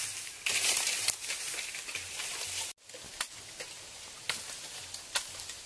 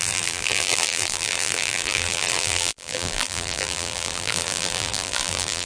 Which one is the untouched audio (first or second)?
first